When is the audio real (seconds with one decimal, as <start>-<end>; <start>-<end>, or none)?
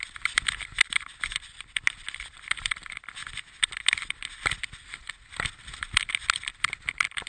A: 0.0-7.3